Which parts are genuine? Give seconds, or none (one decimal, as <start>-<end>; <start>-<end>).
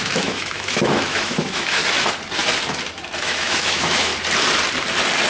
1.8-3.2; 4.1-5.3